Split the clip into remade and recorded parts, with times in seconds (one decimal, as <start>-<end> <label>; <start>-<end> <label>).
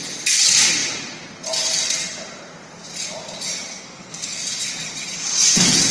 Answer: 0.0-3.7 recorded; 3.7-4.4 remade; 4.4-5.9 recorded